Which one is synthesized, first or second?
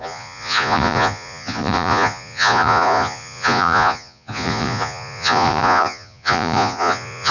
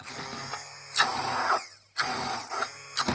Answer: first